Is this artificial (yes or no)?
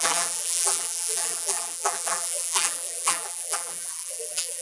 yes